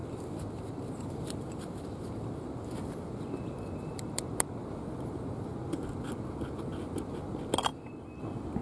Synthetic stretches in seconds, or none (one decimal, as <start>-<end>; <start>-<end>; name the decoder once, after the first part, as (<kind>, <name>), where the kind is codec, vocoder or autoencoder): none